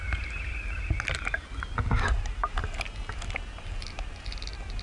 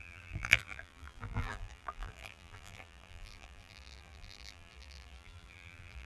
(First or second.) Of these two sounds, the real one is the first